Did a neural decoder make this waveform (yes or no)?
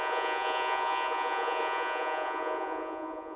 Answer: yes